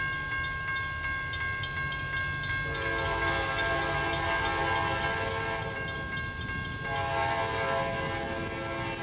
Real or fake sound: real